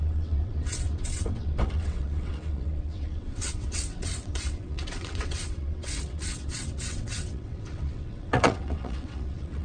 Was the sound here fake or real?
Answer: fake